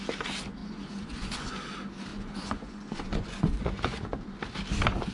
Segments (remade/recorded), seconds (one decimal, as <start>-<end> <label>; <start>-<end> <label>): 0.0-0.6 recorded; 0.6-1.5 remade; 1.5-2.1 recorded; 2.1-4.2 remade; 4.2-5.1 recorded